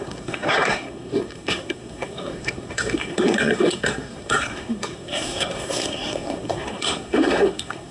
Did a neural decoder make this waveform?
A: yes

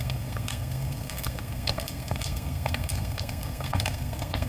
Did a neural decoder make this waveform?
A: yes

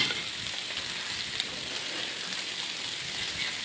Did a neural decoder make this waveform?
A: no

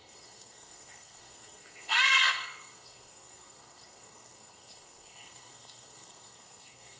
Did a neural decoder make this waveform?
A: yes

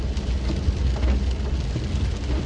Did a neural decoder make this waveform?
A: no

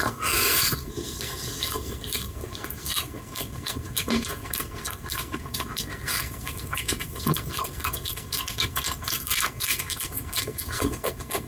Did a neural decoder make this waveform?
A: yes